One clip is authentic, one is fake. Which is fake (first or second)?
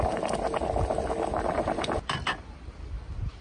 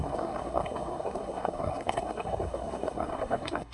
second